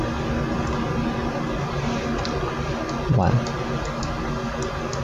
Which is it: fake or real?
real